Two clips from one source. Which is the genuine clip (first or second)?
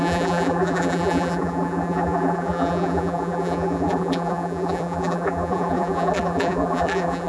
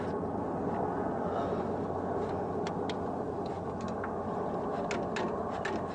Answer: second